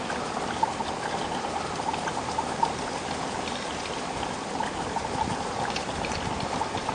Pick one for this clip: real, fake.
real